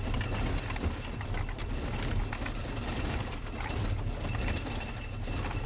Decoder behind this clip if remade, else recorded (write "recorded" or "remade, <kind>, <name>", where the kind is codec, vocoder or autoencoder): recorded